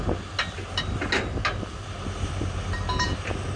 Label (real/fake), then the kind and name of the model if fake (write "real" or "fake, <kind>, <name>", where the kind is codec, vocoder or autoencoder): real